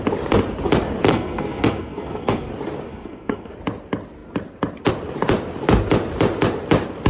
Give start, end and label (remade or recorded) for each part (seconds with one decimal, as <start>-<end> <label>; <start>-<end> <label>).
0.0-1.1 recorded; 1.1-2.5 remade; 2.5-2.9 recorded; 2.9-3.5 remade; 3.5-7.1 recorded